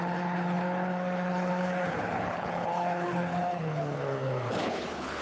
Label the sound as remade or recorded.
remade